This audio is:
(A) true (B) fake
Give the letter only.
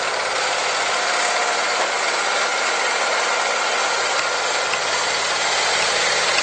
A